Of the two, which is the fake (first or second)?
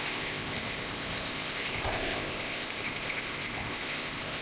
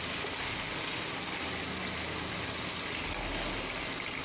first